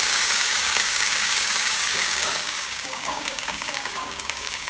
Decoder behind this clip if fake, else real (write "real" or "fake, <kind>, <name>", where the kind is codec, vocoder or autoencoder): fake, codec, DAC